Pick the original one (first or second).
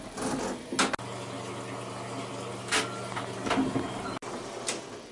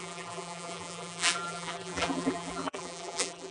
first